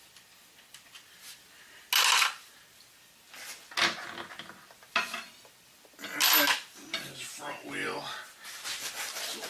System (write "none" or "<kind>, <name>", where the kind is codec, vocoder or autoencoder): none